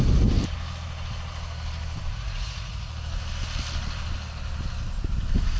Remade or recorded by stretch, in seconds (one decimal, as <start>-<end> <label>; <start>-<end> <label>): 0.0-2.1 recorded; 2.1-2.9 remade; 2.9-5.6 recorded